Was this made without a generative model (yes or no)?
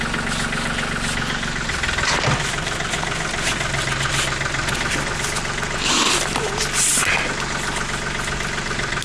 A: yes